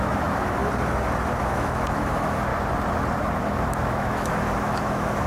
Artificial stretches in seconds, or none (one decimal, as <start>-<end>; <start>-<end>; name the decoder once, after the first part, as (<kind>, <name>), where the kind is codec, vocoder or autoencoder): 0.0-0.6 (autoencoder, DAC-VAE); 1.4-2.5; 3.4-5.3